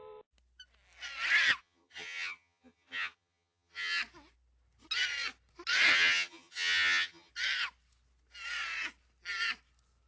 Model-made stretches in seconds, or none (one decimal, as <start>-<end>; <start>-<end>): 1.6-4.0; 5.9-7.3